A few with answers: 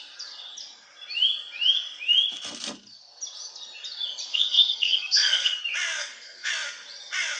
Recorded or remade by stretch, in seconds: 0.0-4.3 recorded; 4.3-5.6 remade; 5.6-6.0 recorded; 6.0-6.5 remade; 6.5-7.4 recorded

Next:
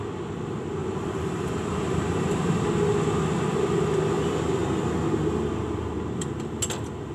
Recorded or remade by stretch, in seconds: 0.0-0.8 recorded; 0.8-2.6 remade; 2.6-7.1 recorded

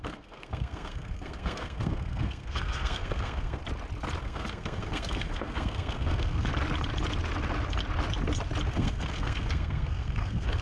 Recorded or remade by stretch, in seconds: 0.0-3.6 remade; 3.6-4.2 recorded; 4.2-6.5 remade; 6.5-8.7 recorded; 8.7-10.6 remade

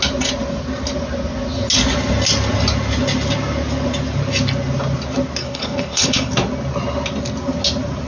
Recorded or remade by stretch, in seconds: 0.0-5.4 recorded; 5.4-6.3 remade; 6.3-8.1 recorded

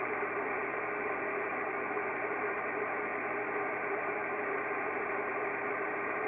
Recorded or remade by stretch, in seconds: 0.0-1.5 remade; 1.5-2.1 recorded; 2.1-3.1 remade; 3.1-3.7 recorded; 3.7-6.3 remade

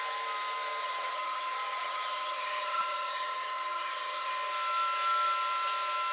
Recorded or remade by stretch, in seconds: 0.0-0.8 recorded; 0.8-4.3 remade; 4.3-6.1 recorded

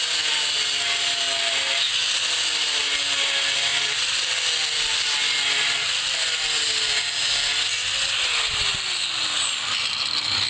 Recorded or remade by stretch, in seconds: 0.0-2.0 recorded; 2.0-2.8 remade; 2.8-10.5 recorded